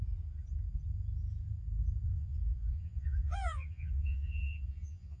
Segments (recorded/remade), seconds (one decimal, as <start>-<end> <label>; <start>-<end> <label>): 0.0-2.1 recorded; 2.1-5.2 remade